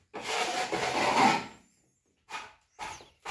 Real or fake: real